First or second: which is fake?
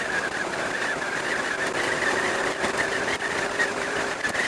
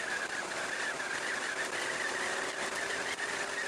first